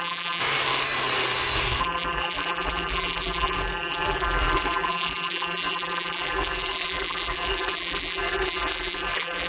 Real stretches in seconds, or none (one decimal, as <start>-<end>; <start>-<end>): 0.4-1.8